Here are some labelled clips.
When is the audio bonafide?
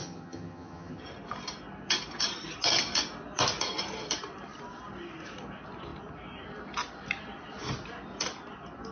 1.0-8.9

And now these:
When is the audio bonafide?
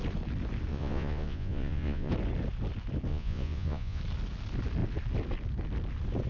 0.0-0.7; 2.1-3.1; 4.0-6.3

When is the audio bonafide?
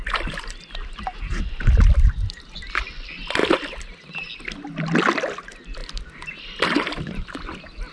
0.0-7.9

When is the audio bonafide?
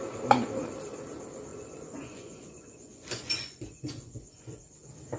0.0-1.5; 4.6-5.2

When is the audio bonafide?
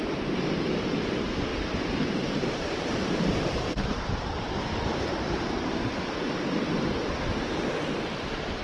0.0-1.5; 4.5-4.9; 5.9-8.6